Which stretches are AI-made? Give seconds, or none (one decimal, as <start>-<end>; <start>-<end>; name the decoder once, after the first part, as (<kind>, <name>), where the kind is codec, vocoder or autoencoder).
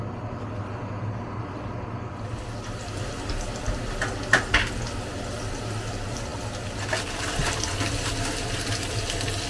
none